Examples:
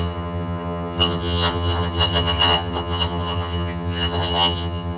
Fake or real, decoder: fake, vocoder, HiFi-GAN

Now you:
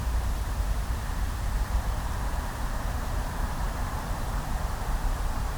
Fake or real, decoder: fake, vocoder, BigVGAN v2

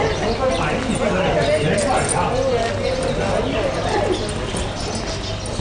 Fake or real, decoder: real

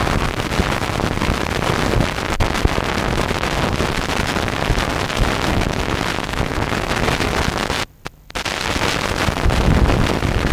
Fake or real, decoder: real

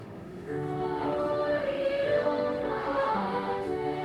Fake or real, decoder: fake, autoencoder, DAC-VAE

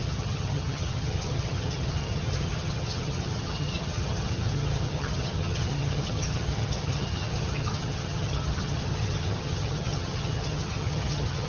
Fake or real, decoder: fake, vocoder, HiFi-GAN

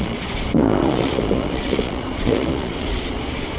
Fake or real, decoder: fake, vocoder, Vocos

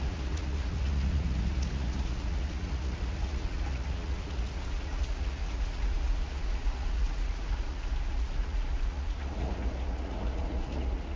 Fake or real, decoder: fake, vocoder, Vocos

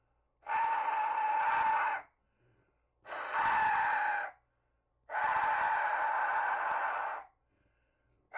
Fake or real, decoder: real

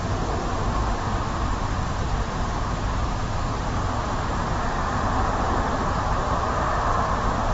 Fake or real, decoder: fake, vocoder, BigVGAN v2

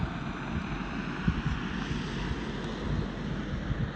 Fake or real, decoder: real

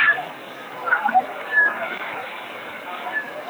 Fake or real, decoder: fake, codec, DAC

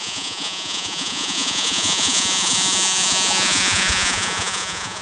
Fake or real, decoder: fake, vocoder, Vocos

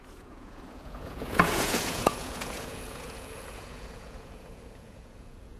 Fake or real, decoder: fake, vocoder, Vocos